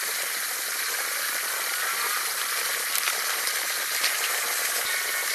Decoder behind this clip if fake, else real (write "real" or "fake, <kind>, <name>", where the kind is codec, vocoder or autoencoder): fake, vocoder, BigVGAN v2